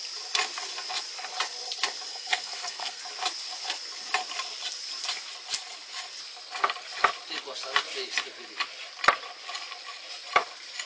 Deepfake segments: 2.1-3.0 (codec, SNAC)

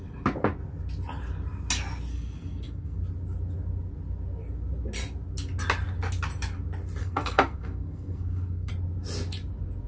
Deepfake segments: 2.1-3.0 (codec, SNAC); 7.0-8.7

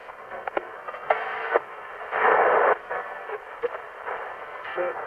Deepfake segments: 0.0-1.9 (codec, SNAC); 2.8-3.4; 4.3-5.1